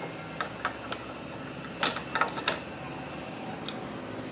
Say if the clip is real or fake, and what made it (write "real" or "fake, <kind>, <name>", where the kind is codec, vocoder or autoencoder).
real